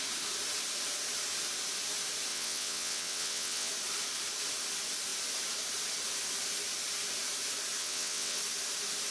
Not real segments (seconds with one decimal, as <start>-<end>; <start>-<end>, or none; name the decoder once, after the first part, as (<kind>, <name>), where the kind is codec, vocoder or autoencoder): 2.3-3.7 (vocoder, WaveNeXt); 7.8-8.4